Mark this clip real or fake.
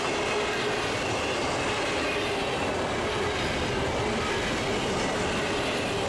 real